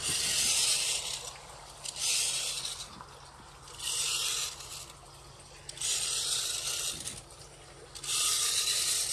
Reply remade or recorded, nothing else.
recorded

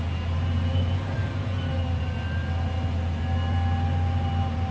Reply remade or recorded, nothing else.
recorded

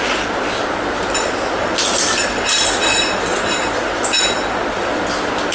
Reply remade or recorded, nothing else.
recorded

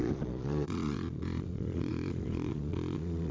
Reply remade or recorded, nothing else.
remade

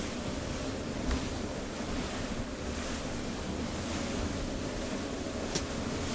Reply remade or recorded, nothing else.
recorded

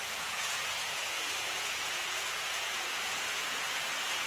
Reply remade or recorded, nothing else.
remade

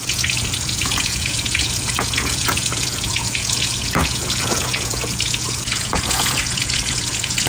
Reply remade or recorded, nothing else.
remade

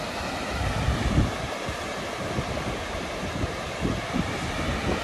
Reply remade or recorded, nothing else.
recorded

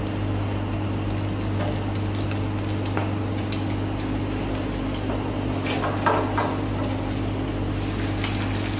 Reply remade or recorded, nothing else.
recorded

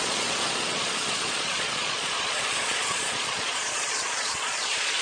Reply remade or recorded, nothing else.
remade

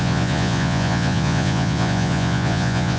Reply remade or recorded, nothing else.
remade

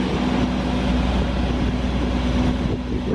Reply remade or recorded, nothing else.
recorded